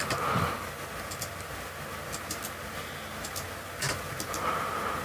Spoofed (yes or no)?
no